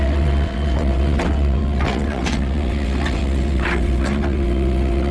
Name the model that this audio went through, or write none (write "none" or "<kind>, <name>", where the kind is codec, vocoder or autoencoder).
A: vocoder, WaveNeXt